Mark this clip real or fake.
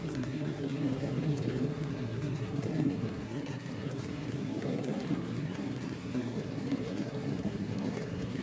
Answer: fake